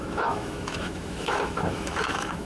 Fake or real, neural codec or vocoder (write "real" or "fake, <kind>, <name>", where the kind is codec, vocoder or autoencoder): fake, autoencoder, DAC-VAE